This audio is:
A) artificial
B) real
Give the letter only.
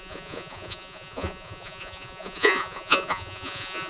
A